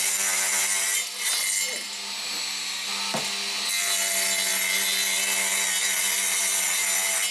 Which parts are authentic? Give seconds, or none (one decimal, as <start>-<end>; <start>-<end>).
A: 0.0-7.3